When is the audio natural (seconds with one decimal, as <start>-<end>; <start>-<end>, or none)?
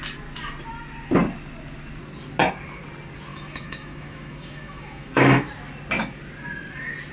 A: 0.0-3.3; 5.5-7.1